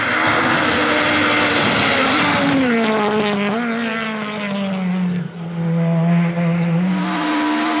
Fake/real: real